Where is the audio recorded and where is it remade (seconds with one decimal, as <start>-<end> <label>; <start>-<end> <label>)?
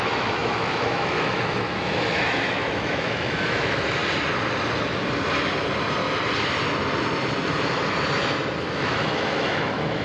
0.0-4.0 remade; 4.0-8.6 recorded; 8.6-10.0 remade